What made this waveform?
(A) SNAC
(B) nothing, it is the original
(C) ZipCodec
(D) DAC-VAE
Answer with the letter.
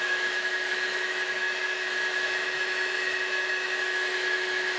D